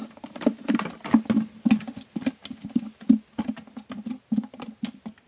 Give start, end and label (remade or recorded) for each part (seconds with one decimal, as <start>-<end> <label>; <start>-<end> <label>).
0.0-0.9 remade; 0.9-5.3 recorded